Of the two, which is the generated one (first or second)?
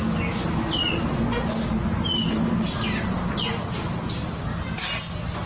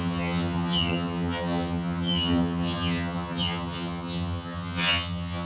second